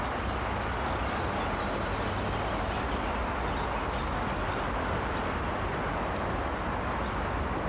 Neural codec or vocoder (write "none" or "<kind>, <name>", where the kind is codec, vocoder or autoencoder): none